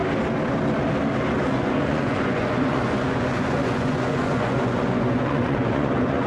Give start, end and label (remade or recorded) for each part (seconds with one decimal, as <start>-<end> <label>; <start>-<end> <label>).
0.0-1.5 recorded; 1.5-6.3 remade